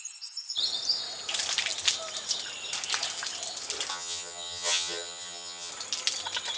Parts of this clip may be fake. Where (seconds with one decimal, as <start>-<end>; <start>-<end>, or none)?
3.9-5.7